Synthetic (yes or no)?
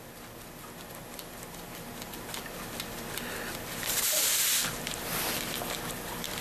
no